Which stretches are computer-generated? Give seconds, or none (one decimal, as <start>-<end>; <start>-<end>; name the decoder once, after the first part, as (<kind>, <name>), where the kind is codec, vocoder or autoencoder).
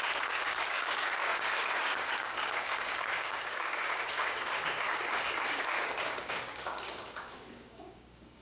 0.0-8.4 (codec, DAC)